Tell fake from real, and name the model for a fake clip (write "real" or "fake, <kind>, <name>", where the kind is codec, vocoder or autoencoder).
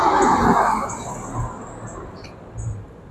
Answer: real